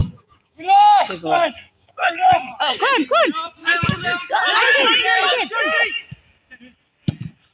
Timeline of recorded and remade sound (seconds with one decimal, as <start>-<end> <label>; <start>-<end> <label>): 0.0-2.8 remade; 2.8-3.6 recorded; 3.6-4.3 remade; 4.3-7.5 recorded